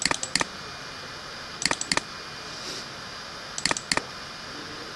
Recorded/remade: recorded